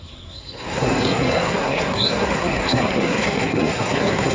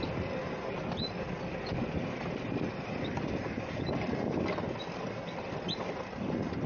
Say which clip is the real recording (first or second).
second